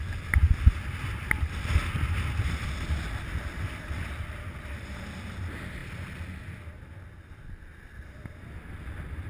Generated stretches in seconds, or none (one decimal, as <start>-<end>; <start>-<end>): none